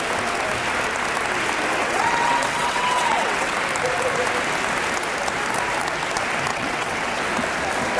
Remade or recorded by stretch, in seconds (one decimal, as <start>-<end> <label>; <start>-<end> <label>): 0.0-1.8 recorded; 1.8-3.5 remade; 3.5-6.5 recorded; 6.5-7.2 remade; 7.2-8.0 recorded